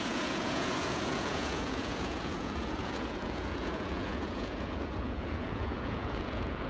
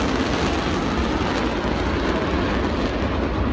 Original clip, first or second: second